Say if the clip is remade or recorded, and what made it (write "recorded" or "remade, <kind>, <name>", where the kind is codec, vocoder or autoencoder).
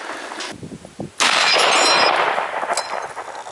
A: recorded